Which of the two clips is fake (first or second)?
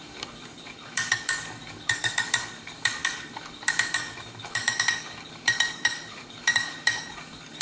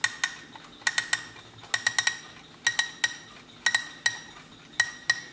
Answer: first